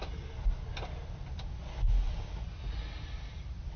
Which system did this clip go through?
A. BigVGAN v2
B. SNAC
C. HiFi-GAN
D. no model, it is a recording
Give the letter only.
D